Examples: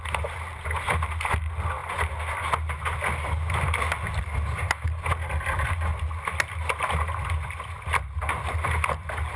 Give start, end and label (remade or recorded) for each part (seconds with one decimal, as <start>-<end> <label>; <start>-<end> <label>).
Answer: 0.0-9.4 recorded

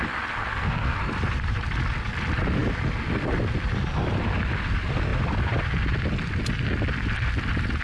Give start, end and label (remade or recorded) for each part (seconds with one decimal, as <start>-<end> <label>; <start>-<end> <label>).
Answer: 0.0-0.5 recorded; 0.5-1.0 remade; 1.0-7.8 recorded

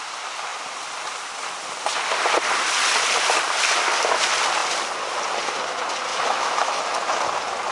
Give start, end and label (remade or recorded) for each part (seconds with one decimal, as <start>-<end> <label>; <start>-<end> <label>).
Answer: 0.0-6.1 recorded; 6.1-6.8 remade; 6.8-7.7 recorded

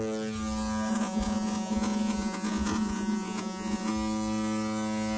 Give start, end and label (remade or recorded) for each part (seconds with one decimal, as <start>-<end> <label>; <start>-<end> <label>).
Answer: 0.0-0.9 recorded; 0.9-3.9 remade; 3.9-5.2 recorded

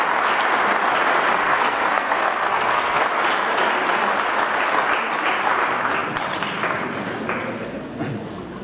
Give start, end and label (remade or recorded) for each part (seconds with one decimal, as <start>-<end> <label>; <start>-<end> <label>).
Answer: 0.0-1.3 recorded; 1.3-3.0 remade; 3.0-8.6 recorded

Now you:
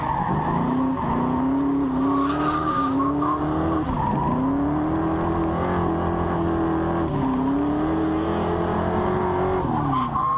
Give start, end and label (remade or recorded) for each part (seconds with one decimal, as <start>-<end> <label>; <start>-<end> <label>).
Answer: 0.0-2.6 recorded; 2.6-3.4 remade; 3.4-10.4 recorded

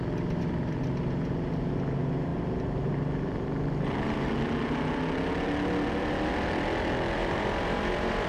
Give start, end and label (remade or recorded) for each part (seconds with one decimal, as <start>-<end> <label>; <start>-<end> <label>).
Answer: 0.0-7.2 recorded; 7.2-8.3 remade

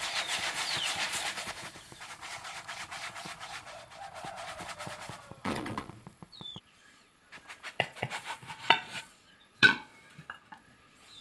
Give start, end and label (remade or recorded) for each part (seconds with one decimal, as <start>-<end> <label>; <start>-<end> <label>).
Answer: 0.0-9.9 remade; 9.9-10.6 recorded; 10.6-11.2 remade